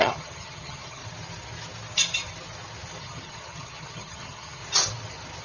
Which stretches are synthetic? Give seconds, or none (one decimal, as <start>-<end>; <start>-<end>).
0.0-1.0; 3.0-4.6

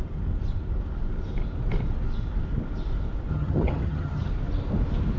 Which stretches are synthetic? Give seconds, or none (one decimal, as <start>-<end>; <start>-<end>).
3.3-4.3

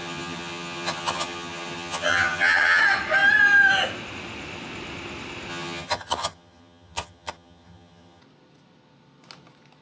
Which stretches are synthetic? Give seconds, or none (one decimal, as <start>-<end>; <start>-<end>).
0.0-2.8; 5.5-8.2

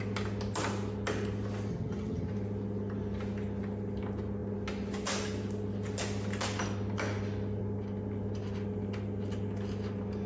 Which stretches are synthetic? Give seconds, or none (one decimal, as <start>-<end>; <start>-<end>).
1.7-2.3

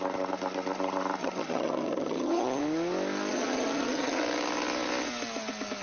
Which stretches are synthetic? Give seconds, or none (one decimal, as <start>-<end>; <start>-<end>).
1.2-2.6; 3.3-4.2

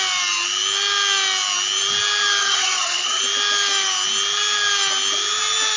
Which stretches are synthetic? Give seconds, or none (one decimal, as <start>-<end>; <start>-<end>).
2.4-3.2

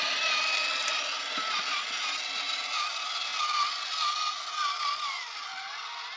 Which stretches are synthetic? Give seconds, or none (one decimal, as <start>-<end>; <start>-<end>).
none